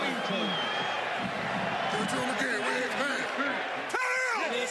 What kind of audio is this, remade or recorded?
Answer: recorded